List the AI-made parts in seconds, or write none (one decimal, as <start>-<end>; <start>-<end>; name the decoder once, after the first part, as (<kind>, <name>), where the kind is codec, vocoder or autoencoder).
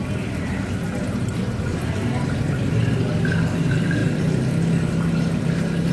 none